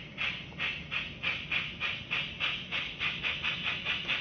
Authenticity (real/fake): real